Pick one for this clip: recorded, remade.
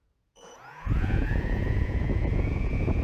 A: remade